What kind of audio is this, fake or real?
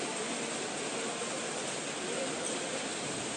real